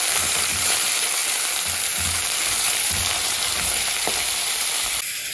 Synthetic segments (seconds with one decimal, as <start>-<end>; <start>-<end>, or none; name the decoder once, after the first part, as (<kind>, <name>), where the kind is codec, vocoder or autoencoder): 0.0-1.2 (vocoder, BigVGAN v2); 2.5-5.3